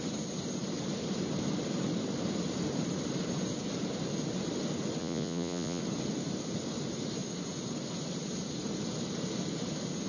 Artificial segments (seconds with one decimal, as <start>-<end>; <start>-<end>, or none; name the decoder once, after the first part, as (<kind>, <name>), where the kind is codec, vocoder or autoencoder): 5.0-5.8 (vocoder, Vocos)